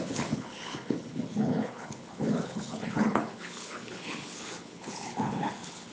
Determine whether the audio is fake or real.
fake